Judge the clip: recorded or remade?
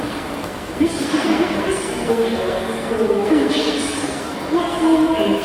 remade